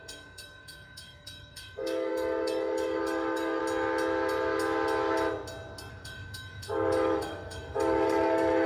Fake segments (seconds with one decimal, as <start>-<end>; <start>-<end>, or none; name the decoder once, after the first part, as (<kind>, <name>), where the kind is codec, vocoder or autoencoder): 0.0-3.6 (codec, DAC); 5.9-8.7